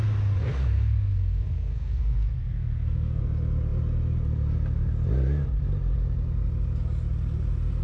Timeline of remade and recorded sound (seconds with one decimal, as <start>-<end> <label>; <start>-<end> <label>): 0.0-0.4 recorded; 0.4-3.2 remade; 3.2-7.8 recorded